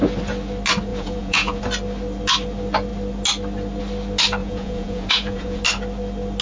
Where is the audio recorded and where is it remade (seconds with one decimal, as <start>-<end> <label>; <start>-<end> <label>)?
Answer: 0.0-0.9 recorded; 0.9-1.6 remade; 1.6-4.4 recorded; 4.4-5.6 remade; 5.6-6.4 recorded